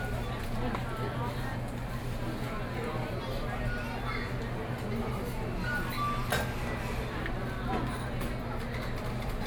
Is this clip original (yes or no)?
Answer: yes